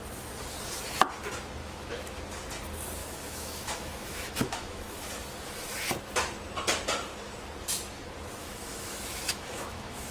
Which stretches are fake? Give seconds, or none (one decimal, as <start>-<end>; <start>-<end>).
1.6-2.2; 3.0-5.1; 8.4-10.1